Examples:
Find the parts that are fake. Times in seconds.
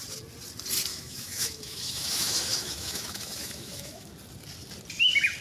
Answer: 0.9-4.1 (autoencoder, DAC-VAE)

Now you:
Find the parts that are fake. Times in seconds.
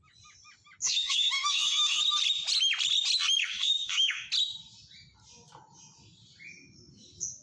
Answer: 0.8-2.0 (autoencoder, DAC-VAE); 3.4-4.3